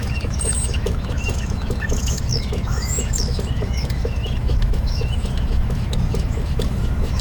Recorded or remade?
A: remade